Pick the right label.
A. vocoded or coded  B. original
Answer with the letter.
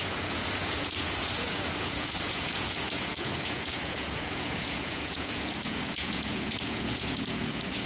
A